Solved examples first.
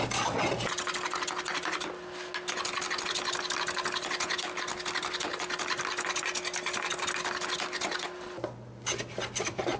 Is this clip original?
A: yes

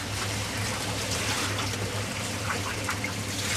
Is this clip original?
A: no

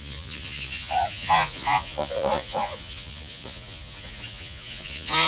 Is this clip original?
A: no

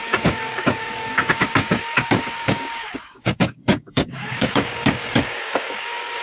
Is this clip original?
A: no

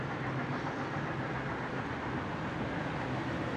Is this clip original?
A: yes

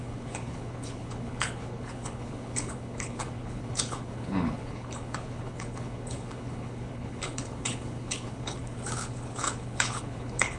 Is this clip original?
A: no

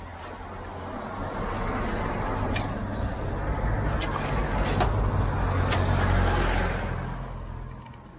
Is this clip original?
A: yes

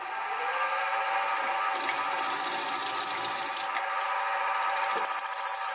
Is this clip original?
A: yes